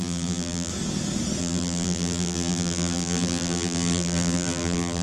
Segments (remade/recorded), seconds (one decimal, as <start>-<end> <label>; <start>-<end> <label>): 0.0-0.7 remade; 0.7-1.4 recorded; 1.4-5.0 remade